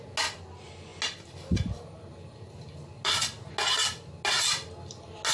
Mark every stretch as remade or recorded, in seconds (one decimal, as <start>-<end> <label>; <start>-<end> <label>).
0.0-5.3 recorded

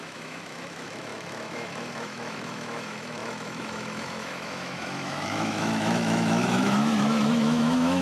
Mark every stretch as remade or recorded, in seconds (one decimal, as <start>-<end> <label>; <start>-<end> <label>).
0.0-8.0 remade

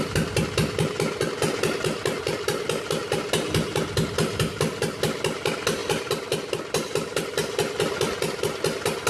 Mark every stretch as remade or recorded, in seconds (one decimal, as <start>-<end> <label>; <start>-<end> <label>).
0.0-9.1 recorded

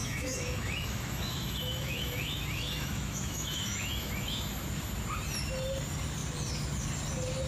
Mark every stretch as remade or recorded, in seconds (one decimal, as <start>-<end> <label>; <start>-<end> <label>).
0.0-4.5 remade; 4.5-7.5 recorded

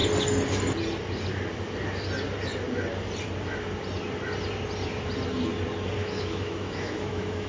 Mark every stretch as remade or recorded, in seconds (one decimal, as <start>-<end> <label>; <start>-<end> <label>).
0.0-6.0 recorded; 6.0-7.5 remade

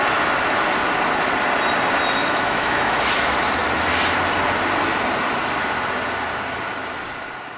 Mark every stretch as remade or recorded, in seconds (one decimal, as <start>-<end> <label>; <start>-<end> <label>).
0.0-2.2 recorded; 2.2-3.0 remade; 3.0-7.6 recorded

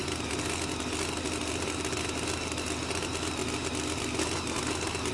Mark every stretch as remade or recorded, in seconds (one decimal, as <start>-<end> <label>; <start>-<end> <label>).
0.0-5.1 recorded

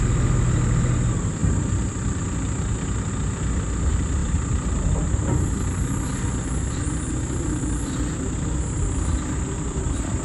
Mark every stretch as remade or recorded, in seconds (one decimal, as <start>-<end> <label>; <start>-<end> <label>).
0.0-10.2 recorded